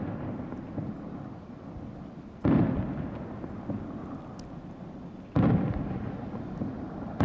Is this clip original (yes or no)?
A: yes